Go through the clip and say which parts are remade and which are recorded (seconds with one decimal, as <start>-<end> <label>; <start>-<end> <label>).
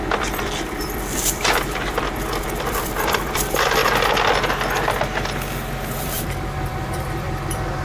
0.0-3.8 remade; 3.8-6.0 recorded; 6.0-7.8 remade